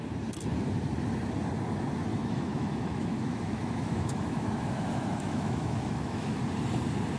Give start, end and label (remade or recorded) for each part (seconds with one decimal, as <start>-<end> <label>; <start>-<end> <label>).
0.0-2.1 recorded; 2.1-6.4 remade; 6.4-7.2 recorded